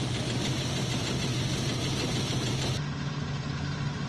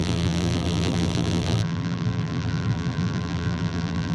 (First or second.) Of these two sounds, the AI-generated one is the second